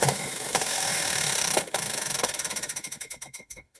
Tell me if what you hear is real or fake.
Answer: fake